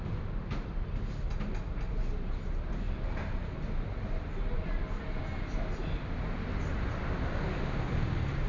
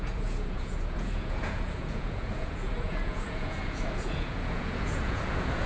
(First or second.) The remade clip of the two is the second